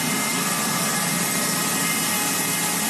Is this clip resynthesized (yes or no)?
no